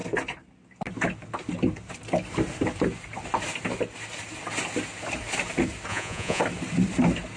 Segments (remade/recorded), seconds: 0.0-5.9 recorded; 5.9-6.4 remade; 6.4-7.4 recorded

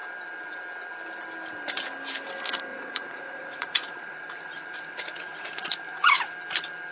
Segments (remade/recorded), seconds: 0.0-2.7 recorded; 2.7-6.3 remade; 6.3-6.9 recorded